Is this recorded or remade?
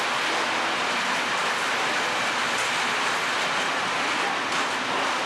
recorded